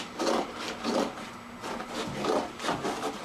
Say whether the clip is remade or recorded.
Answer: recorded